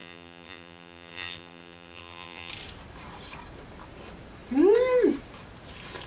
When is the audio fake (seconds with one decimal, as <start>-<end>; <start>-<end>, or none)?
0.0-2.5